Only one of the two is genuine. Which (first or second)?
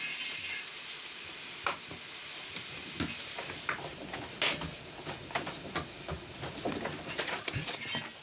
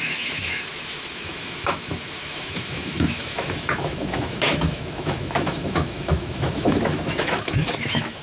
first